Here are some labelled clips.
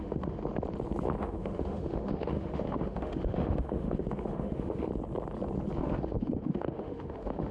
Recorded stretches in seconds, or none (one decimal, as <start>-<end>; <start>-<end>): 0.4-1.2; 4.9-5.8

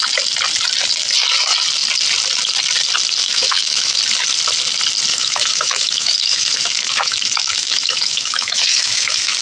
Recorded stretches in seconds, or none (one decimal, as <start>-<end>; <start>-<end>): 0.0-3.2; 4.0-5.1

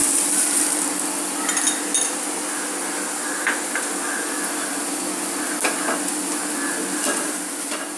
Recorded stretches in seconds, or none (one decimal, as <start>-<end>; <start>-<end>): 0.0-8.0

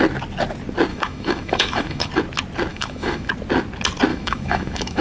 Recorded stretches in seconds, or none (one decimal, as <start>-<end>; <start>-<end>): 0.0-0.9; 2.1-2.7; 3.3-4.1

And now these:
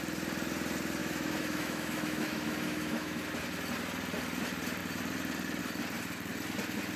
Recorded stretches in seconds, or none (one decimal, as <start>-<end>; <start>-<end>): 0.0-1.0; 3.2-7.0

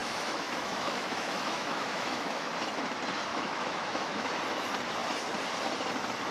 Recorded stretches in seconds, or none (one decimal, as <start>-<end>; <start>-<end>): 2.5-3.3; 4.3-6.3

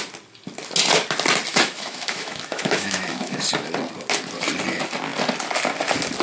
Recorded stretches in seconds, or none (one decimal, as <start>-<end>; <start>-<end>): 0.0-1.5; 3.4-6.2